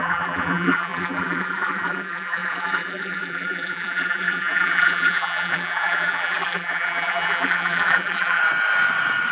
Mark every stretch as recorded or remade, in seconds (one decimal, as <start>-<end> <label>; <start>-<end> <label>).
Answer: 0.0-8.4 remade; 8.4-9.3 recorded